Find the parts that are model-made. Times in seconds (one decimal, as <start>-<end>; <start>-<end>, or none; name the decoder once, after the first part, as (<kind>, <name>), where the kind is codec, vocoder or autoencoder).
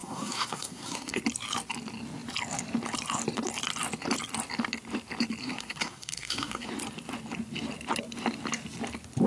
0.0-1.2 (codec, SNAC); 5.4-6.7